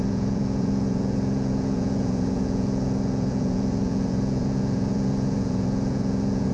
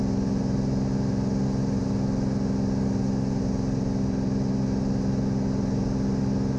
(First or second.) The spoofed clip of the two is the first